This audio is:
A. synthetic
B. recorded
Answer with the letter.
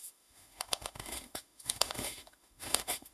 A